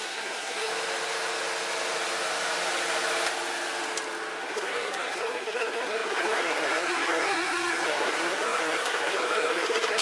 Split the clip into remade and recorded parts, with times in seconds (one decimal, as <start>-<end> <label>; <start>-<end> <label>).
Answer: 0.0-0.7 remade; 0.7-4.4 recorded; 4.4-10.0 remade